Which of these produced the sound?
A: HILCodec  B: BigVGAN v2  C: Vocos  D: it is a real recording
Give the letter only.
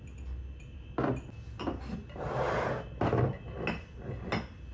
D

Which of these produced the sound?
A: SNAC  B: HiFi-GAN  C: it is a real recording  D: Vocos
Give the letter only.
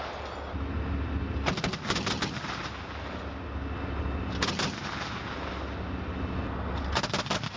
C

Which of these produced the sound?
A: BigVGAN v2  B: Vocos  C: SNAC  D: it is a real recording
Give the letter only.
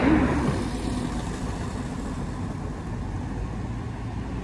D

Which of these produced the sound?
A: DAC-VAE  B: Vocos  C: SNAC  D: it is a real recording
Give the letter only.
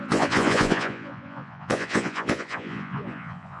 B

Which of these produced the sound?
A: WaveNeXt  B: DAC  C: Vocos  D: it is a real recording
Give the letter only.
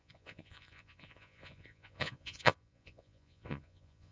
C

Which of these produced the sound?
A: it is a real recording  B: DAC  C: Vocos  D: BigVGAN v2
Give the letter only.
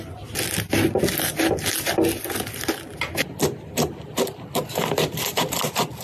A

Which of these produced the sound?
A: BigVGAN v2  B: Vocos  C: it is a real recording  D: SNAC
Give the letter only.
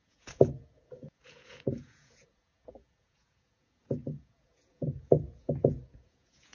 B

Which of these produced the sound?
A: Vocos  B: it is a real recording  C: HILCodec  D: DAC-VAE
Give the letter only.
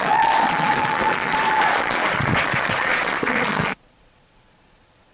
A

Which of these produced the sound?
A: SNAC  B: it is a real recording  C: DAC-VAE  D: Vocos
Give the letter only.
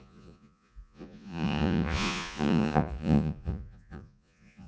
D